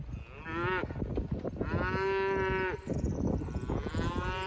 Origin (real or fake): real